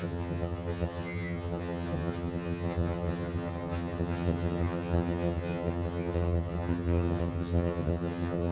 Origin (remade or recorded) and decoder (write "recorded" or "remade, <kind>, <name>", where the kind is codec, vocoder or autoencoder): remade, vocoder, HiFi-GAN